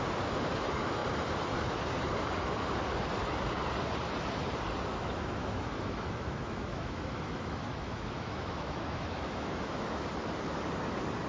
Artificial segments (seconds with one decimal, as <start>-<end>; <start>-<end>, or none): 4.9-10.1